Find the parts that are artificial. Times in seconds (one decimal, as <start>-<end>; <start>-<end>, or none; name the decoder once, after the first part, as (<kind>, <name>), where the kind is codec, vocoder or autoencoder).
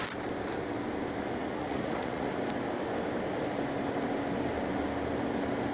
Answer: 1.4-2.4 (vocoder, Vocos)